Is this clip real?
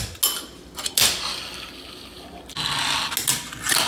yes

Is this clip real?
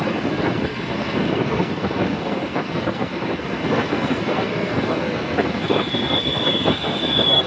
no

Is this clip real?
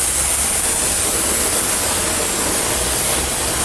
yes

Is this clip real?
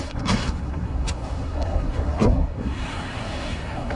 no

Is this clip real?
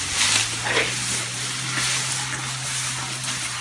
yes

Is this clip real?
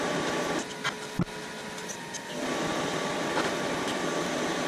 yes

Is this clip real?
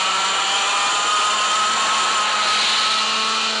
yes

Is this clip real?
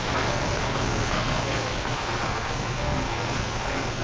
no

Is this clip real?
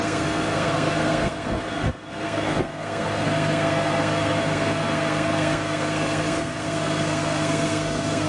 no